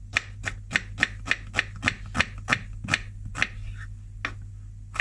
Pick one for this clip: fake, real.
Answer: real